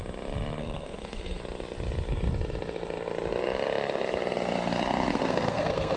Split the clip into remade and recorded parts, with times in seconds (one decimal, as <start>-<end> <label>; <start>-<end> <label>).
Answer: 0.0-0.6 recorded; 0.6-1.4 remade; 1.4-5.1 recorded; 5.1-6.0 remade